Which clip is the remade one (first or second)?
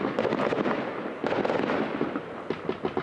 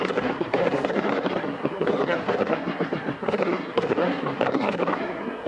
second